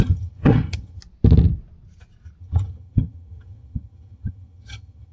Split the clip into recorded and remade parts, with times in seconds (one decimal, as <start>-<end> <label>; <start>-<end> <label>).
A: 0.0-1.0 remade; 1.0-2.4 recorded; 2.4-5.1 remade